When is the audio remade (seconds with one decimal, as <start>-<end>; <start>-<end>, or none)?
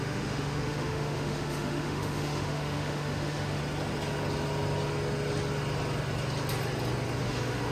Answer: 0.0-3.6; 7.2-7.7